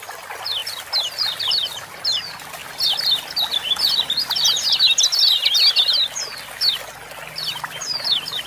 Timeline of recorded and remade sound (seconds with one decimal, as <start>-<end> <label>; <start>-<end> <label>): 0.0-0.6 remade; 0.6-1.1 recorded; 1.1-2.6 remade; 2.6-7.1 recorded; 7.1-8.5 remade